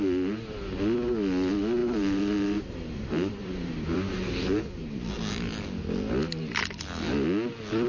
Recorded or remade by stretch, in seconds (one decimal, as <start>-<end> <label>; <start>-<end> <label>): 0.0-1.8 recorded; 1.8-4.6 remade; 4.6-7.9 recorded